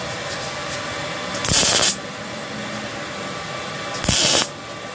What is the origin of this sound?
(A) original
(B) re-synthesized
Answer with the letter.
A